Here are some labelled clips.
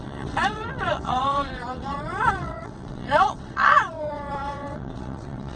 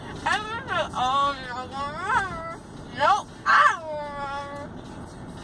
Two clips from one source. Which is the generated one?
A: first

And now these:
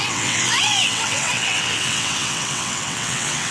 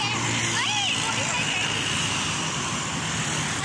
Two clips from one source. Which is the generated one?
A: first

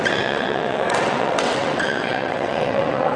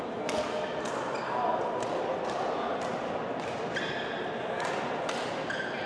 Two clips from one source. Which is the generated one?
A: first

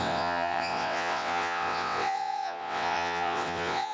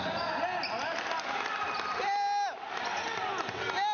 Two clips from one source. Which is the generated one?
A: first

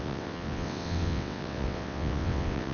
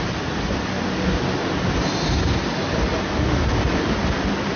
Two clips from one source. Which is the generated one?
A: first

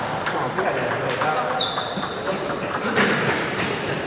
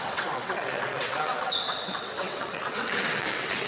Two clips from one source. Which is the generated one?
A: second